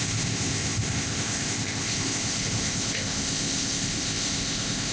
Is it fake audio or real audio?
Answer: fake